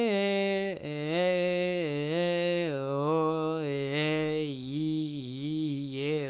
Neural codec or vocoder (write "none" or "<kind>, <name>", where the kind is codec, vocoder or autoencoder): codec, DAC